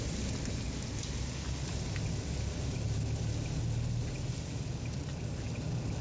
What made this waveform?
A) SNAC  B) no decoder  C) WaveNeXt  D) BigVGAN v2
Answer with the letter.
B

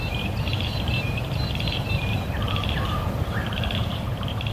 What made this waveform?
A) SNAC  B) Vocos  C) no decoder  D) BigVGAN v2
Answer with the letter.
D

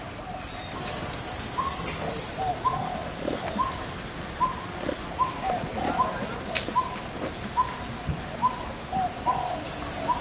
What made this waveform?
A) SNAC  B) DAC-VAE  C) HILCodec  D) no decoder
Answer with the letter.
D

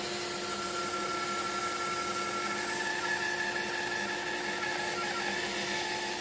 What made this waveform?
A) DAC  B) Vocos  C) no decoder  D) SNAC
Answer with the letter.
C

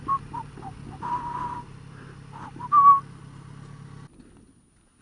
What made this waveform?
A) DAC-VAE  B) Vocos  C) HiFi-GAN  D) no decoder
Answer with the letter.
D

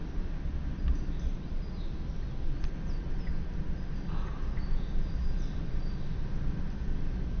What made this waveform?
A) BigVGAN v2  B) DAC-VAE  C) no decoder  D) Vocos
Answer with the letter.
C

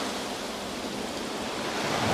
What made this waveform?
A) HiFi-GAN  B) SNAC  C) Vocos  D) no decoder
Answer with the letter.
D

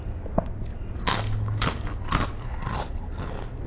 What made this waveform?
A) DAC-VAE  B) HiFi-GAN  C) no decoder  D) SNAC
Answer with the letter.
C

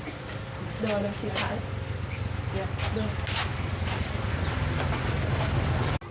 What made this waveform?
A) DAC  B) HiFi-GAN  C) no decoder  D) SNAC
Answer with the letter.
C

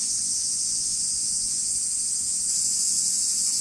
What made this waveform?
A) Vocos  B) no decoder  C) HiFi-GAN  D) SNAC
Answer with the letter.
A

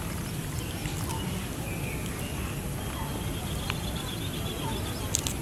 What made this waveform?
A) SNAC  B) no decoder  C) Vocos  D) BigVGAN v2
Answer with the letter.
B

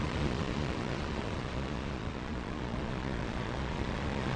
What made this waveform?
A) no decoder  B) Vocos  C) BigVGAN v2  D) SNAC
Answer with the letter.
B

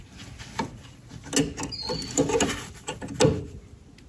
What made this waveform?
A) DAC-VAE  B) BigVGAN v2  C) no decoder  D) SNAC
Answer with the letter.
C